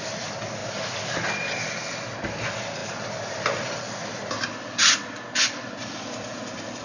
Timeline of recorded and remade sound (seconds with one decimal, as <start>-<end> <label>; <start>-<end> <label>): 0.0-6.8 recorded